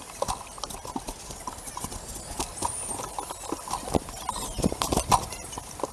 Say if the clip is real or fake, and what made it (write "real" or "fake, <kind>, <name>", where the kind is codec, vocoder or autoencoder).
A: real